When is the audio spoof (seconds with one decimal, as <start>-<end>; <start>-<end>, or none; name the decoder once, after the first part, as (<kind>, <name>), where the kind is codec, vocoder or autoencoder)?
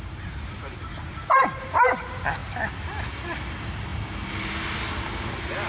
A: none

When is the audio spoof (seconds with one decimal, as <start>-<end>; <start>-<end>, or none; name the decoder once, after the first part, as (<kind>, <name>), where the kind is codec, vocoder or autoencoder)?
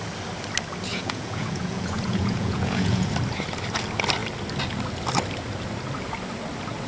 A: 0.9-3.1 (vocoder, Vocos)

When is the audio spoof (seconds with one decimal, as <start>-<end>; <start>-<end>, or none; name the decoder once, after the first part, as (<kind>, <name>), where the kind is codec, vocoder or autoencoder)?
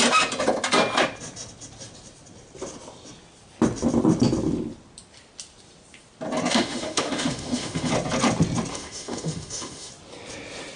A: 6.5-7.9 (autoencoder, DAC-VAE); 8.7-9.9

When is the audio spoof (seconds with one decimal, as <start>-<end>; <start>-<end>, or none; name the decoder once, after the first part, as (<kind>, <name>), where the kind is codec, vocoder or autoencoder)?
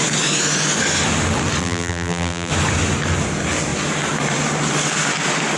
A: 1.6-2.5 (vocoder, BigVGAN v2)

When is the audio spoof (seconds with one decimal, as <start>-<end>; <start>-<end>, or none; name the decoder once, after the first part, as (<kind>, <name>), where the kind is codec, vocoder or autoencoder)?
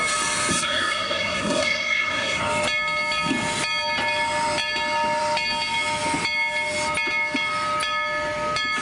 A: 0.5-2.4 (codec, SNAC)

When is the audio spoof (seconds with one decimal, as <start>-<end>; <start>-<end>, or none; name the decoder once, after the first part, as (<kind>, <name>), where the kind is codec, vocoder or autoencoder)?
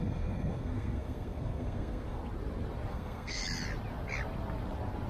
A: 0.0-2.2 (codec, SNAC); 2.9-3.4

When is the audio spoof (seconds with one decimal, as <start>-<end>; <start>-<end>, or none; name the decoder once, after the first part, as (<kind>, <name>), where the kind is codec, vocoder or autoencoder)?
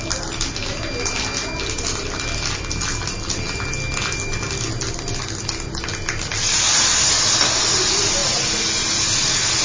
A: none